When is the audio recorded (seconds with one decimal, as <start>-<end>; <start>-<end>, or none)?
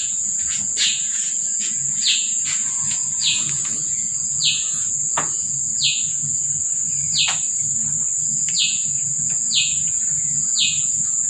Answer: 6.6-8.3